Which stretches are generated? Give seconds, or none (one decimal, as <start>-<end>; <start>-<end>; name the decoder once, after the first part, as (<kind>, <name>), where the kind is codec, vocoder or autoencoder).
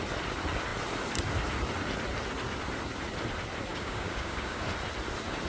3.7-4.6 (codec, DAC)